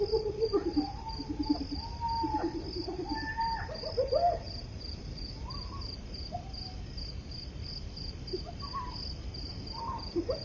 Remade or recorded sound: recorded